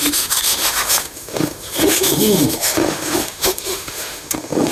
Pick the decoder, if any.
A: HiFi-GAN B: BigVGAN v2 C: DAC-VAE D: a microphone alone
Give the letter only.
C